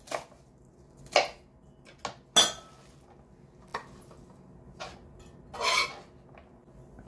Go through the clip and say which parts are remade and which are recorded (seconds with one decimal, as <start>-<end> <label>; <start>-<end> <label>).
0.0-7.1 recorded